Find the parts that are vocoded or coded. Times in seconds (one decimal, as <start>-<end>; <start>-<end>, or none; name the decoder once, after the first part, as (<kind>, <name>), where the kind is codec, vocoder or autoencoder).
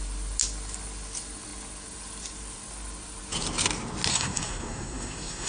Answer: 4.1-5.5 (codec, SNAC)